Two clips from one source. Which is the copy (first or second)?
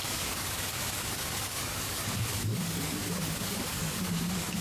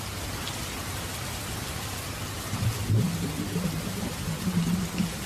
first